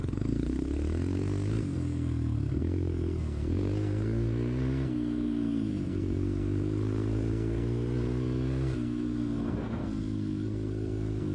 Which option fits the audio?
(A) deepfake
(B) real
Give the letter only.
A